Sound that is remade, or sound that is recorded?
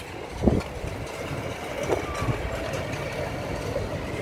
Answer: recorded